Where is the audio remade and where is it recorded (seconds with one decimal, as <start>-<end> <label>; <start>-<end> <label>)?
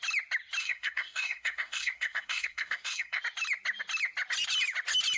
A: 0.0-0.6 recorded; 0.6-3.2 remade; 3.2-5.2 recorded